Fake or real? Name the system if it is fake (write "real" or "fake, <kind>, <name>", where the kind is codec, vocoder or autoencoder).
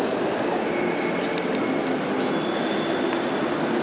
real